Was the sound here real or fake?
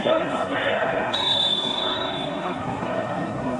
fake